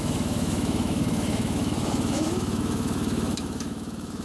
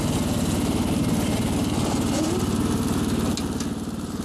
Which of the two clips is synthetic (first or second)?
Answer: first